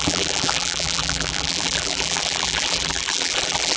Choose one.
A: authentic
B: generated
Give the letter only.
B